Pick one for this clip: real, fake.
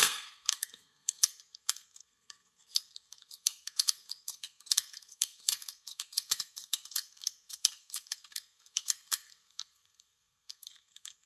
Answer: fake